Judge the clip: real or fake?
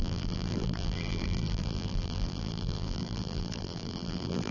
fake